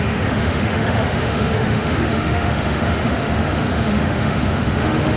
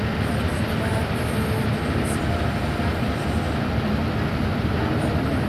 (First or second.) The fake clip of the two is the first